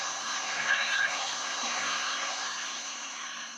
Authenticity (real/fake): fake